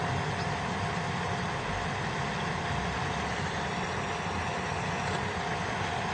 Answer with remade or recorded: recorded